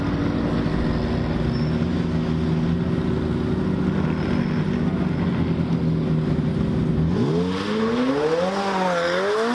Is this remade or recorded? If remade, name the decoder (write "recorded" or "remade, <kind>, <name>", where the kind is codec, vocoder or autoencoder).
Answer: recorded